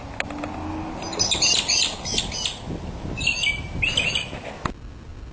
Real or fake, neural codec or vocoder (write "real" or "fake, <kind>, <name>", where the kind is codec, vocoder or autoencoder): real